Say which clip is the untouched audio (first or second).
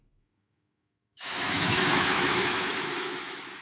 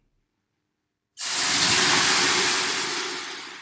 second